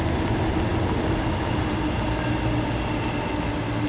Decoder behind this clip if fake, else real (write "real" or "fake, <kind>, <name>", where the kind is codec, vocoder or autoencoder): real